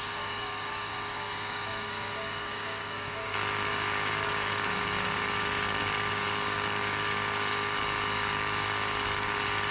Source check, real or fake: fake